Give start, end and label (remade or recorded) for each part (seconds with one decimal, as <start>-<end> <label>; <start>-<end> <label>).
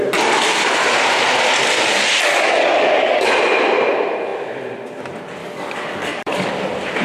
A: 0.0-2.3 recorded; 2.3-3.4 remade; 3.4-5.4 recorded; 5.4-6.5 remade; 6.5-7.0 recorded